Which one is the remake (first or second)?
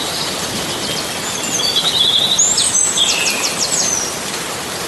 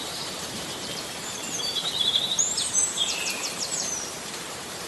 second